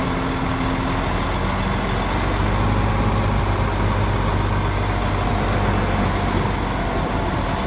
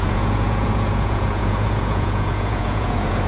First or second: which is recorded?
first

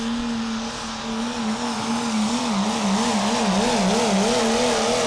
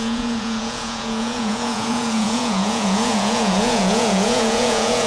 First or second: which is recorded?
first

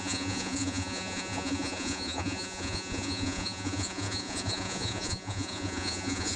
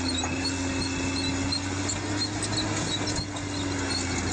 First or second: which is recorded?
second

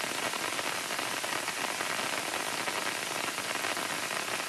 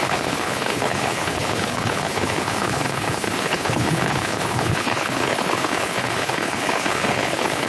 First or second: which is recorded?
first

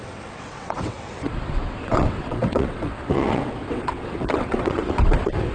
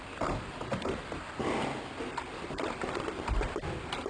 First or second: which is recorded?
second